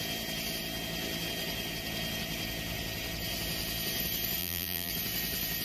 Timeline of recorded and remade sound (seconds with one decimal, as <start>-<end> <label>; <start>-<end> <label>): 0.0-4.4 recorded; 4.4-4.9 remade; 4.9-5.6 recorded

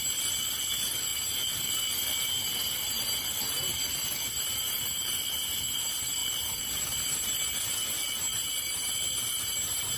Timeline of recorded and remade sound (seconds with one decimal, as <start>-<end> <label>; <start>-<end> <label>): 0.0-10.0 recorded

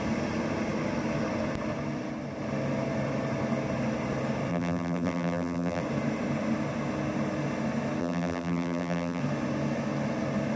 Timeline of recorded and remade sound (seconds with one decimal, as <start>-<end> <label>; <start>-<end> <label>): 0.0-4.5 recorded; 4.5-5.8 remade; 5.8-8.0 recorded; 8.0-9.2 remade; 9.2-10.6 recorded

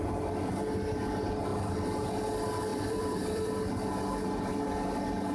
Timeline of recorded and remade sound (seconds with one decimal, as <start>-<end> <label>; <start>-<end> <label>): 0.0-2.7 recorded; 2.7-3.5 remade; 3.5-5.3 recorded

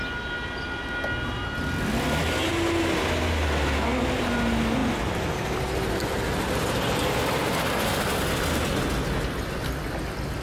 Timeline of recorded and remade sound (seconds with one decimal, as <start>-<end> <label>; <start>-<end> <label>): 0.0-10.4 recorded